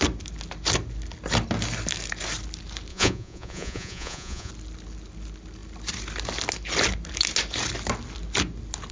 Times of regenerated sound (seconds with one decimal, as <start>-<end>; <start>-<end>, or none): 2.9-4.5